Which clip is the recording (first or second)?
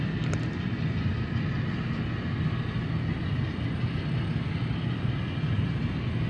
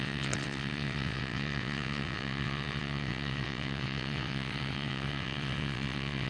first